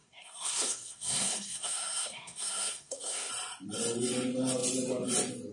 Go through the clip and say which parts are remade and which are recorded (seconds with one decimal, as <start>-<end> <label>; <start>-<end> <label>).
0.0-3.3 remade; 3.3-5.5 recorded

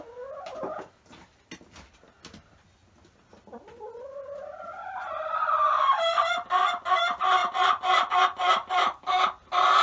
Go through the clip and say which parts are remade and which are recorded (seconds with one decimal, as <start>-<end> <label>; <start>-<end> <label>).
0.0-7.4 recorded; 7.4-8.1 remade; 8.1-9.8 recorded

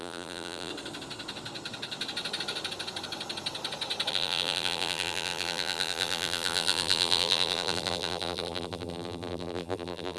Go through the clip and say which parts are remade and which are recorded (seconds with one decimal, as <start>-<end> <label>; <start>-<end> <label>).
0.0-0.7 remade; 0.7-4.1 recorded; 4.1-10.2 remade

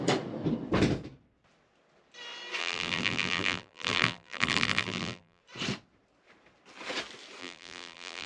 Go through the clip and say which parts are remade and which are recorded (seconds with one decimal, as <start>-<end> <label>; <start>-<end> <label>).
0.0-2.6 recorded; 2.6-5.4 remade; 5.4-7.4 recorded; 7.4-8.3 remade